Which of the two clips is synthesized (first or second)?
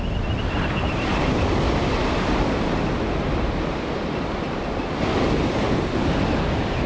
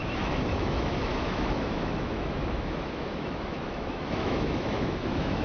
second